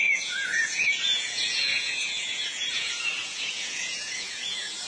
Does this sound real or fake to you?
fake